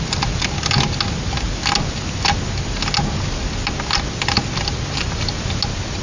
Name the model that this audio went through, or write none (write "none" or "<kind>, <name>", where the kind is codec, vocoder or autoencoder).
none